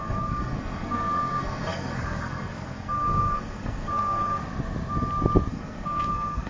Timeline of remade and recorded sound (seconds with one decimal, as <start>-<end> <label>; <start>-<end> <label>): 0.0-4.4 remade; 4.4-5.5 recorded; 5.5-6.5 remade